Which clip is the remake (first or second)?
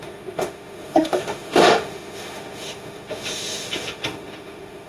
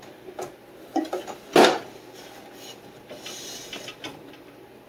first